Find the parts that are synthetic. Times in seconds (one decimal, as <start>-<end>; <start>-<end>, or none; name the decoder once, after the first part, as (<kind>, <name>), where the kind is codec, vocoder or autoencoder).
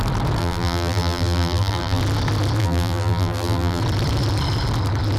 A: 0.4-2.0 (vocoder, BigVGAN v2); 2.6-3.8